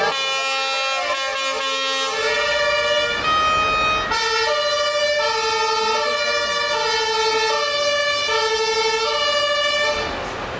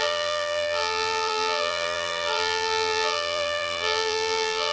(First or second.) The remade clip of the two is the second